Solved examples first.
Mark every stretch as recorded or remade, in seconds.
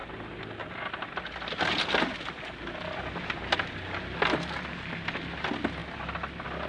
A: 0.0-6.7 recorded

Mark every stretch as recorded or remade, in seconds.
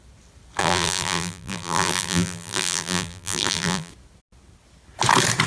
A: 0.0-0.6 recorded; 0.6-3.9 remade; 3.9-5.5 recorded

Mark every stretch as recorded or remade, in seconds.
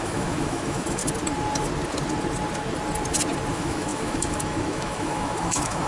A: 0.0-1.0 remade; 1.0-3.5 recorded; 3.5-5.9 remade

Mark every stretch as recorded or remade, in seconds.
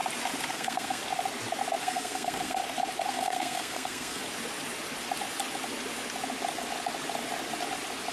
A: 0.0-0.5 recorded; 0.5-1.0 remade; 1.0-1.8 recorded; 1.8-2.6 remade; 2.6-3.1 recorded; 3.1-4.2 remade; 4.2-8.1 recorded